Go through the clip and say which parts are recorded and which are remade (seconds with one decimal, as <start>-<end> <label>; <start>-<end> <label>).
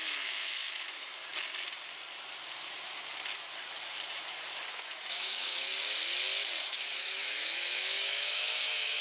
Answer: 0.0-1.2 remade; 1.2-4.7 recorded; 4.7-5.7 remade; 5.7-6.6 recorded; 6.6-9.0 remade